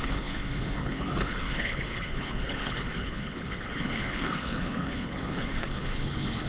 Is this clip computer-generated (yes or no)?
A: yes